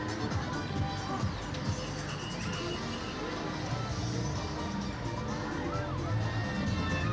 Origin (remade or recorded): recorded